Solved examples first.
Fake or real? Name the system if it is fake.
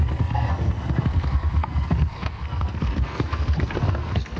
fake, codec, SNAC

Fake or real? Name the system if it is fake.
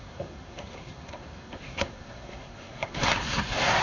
fake, codec, SNAC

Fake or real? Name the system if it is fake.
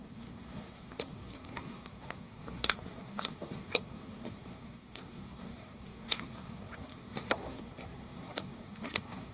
fake, codec, SNAC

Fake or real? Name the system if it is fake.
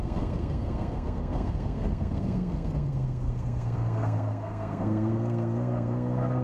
fake, codec, SNAC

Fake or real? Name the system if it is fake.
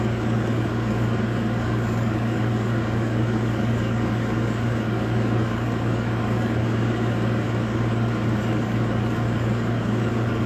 fake, codec, DAC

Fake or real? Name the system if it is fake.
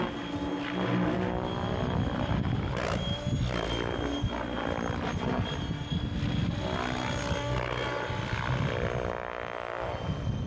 real